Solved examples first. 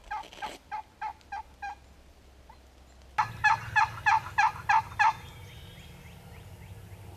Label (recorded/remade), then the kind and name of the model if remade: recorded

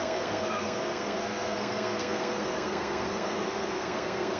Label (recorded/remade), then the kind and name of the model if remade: remade, codec, SNAC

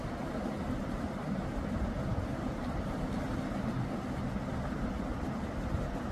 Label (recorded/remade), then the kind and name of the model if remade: recorded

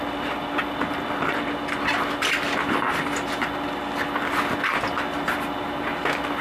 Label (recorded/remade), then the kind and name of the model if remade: recorded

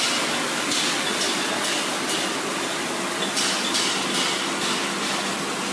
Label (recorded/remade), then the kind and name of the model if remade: recorded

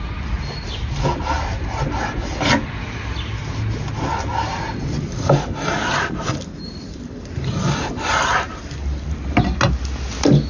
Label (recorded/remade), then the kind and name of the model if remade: recorded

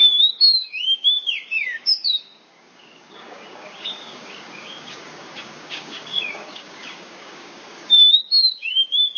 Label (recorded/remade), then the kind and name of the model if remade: remade, codec, DAC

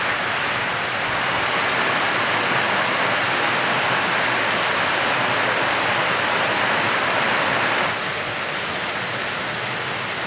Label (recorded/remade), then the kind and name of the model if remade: recorded